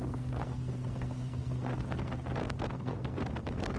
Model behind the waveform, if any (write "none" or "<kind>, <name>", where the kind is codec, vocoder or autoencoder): codec, SNAC